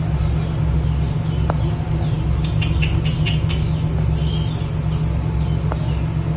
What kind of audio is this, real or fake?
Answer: real